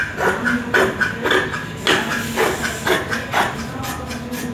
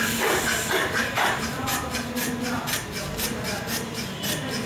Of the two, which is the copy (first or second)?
second